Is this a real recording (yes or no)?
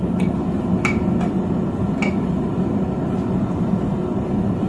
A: yes